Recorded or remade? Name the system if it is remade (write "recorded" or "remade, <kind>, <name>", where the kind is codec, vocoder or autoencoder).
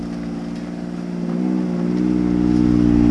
recorded